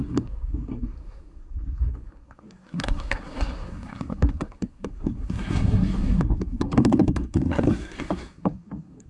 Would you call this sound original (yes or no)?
no